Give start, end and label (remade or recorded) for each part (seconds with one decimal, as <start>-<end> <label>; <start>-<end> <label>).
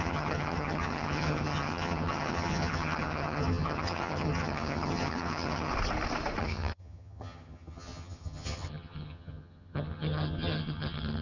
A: 0.0-5.7 remade; 5.7-6.4 recorded; 6.4-11.2 remade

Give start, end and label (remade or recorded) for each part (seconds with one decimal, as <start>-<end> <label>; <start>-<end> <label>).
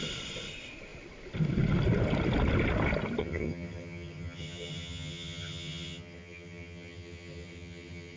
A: 0.0-3.2 recorded; 3.2-8.2 remade